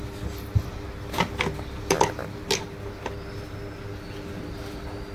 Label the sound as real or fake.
real